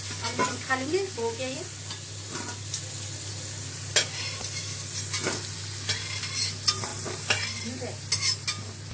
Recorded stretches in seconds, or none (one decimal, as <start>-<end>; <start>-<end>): 0.0-8.9